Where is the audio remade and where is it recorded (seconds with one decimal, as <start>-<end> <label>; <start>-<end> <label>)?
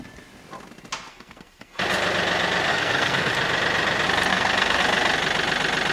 0.0-1.1 recorded; 1.1-1.8 remade; 1.8-2.7 recorded; 2.7-3.3 remade; 3.3-4.3 recorded; 4.3-4.8 remade; 4.8-5.9 recorded